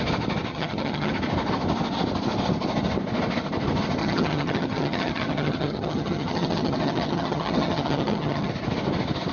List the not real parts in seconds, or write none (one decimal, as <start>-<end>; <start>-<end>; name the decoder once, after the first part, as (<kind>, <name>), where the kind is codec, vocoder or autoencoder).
0.5-1.1 (vocoder, HiFi-GAN); 4.0-8.5